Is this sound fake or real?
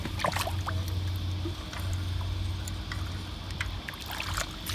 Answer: real